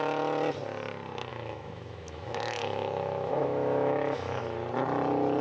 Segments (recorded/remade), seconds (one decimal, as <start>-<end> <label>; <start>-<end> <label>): 0.0-1.3 recorded; 1.3-4.4 remade; 4.4-5.4 recorded